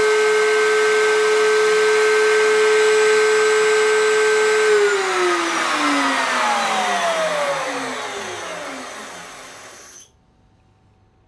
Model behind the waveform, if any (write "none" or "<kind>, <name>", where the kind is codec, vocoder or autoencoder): none